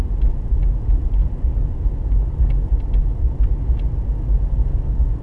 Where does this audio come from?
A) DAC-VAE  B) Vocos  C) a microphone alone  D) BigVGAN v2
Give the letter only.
C